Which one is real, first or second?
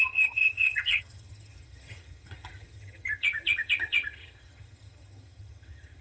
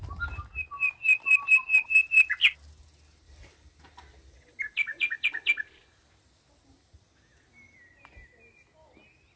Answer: second